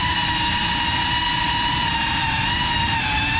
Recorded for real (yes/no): no